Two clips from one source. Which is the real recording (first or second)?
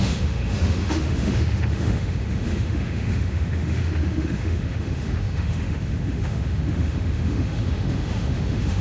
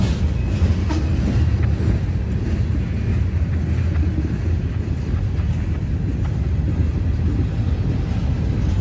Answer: second